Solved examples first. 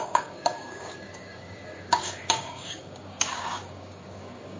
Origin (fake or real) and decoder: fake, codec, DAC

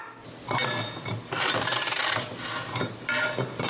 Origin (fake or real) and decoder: real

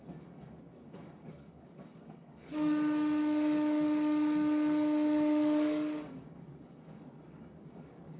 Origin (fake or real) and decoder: fake, codec, DAC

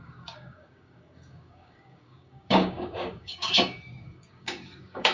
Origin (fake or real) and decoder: fake, codec, DAC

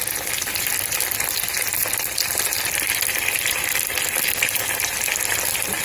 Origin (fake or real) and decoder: real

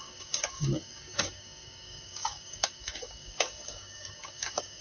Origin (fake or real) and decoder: fake, codec, DAC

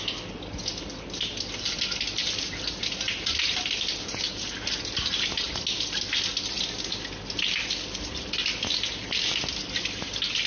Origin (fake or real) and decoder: real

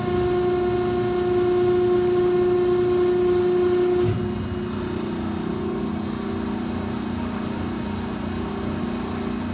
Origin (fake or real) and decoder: real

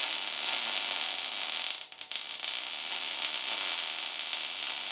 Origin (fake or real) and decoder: real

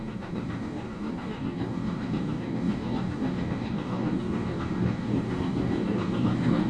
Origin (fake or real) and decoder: fake, codec, DAC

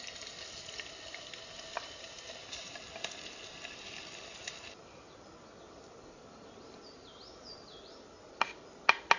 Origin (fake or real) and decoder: real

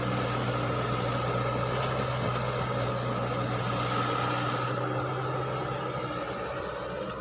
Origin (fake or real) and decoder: real